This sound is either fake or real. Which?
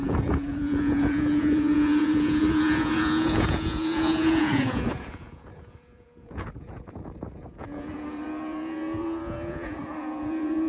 fake